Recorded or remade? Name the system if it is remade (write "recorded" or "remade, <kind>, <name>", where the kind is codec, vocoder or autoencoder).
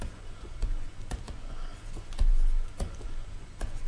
remade, vocoder, Vocos